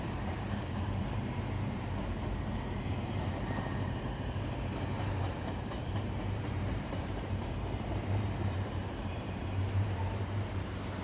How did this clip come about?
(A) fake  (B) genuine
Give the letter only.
A